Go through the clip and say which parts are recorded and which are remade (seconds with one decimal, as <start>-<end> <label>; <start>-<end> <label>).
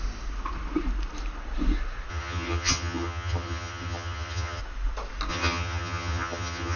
0.0-2.1 recorded; 2.1-4.6 remade; 4.6-5.3 recorded; 5.3-6.8 remade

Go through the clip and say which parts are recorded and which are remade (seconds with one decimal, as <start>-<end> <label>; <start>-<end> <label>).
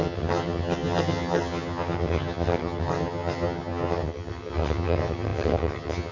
0.0-6.1 remade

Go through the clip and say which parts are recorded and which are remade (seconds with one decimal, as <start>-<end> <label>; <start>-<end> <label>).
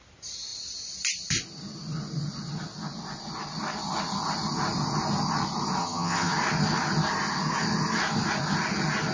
0.0-5.8 recorded; 5.8-6.3 remade; 6.3-9.1 recorded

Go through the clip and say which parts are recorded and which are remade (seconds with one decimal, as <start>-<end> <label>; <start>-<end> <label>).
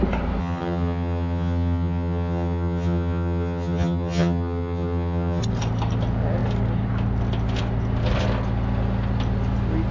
0.0-0.4 recorded; 0.4-5.4 remade; 5.4-9.9 recorded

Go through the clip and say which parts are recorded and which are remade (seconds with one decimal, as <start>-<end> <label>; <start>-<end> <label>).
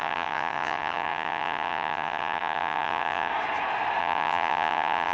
0.0-3.3 remade; 3.3-4.0 recorded; 4.0-5.1 remade